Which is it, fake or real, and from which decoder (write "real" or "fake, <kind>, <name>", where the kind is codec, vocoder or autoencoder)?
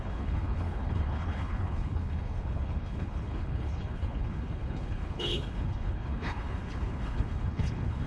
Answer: fake, codec, HILCodec